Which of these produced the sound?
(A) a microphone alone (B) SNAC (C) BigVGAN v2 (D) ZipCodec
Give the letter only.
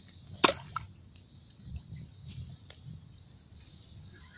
A